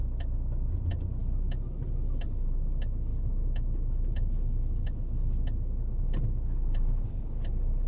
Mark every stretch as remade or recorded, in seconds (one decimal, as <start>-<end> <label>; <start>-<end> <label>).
0.0-7.9 recorded